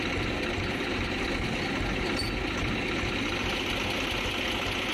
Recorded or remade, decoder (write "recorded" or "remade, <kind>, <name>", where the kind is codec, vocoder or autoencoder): recorded